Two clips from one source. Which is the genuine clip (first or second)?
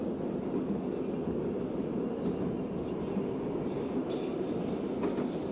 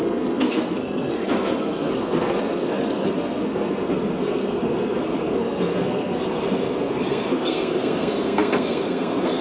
first